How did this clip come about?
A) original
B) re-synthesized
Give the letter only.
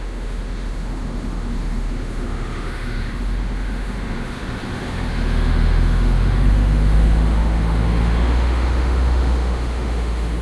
B